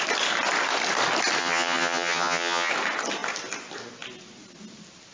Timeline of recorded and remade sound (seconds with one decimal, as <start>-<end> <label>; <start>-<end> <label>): 0.0-1.4 recorded; 1.4-2.7 remade; 2.7-5.1 recorded